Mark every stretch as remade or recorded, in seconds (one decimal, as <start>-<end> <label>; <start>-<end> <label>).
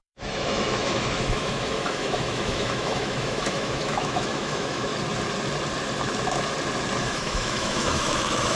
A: 0.0-4.9 remade; 4.9-7.0 recorded; 7.0-8.6 remade